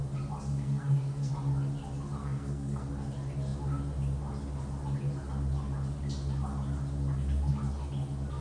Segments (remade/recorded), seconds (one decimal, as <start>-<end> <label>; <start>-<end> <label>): 0.0-0.5 recorded; 0.5-1.3 remade; 1.3-2.2 recorded; 2.2-2.9 remade; 2.9-8.4 recorded